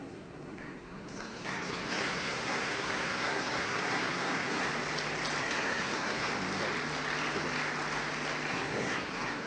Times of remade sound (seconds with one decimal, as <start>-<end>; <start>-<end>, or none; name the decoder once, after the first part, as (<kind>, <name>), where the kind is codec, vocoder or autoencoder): 0.0-4.7 (codec, SNAC); 5.4-6.3; 8.5-9.5